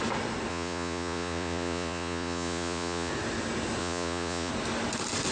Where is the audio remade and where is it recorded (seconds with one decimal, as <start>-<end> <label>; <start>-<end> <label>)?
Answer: 0.0-0.5 recorded; 0.5-3.1 remade; 3.1-3.8 recorded; 3.8-4.5 remade; 4.5-5.3 recorded